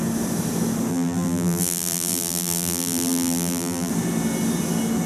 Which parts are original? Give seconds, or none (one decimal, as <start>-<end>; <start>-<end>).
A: 0.0-0.9; 3.9-5.1